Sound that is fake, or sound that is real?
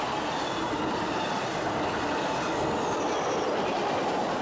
real